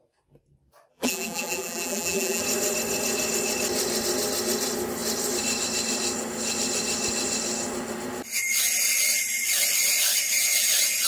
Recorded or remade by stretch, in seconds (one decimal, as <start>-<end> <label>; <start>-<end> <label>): 0.0-0.9 recorded; 0.9-2.4 remade; 2.4-11.1 recorded